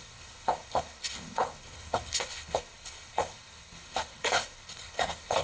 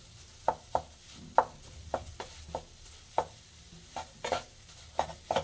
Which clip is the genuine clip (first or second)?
second